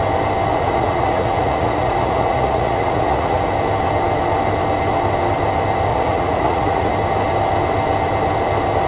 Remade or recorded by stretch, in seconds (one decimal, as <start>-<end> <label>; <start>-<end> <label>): 0.0-0.5 recorded; 0.5-3.5 remade; 3.5-5.9 recorded; 5.9-6.9 remade; 6.9-8.9 recorded